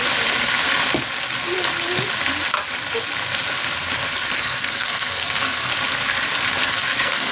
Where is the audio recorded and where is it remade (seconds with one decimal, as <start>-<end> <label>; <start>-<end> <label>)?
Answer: 0.0-4.4 recorded; 4.4-5.7 remade; 5.7-6.7 recorded; 6.7-7.3 remade